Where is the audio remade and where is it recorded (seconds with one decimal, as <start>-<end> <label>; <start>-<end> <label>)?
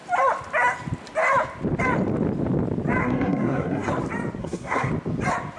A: 0.0-3.0 recorded; 3.0-3.9 remade; 3.9-4.4 recorded; 4.4-4.9 remade; 4.9-5.6 recorded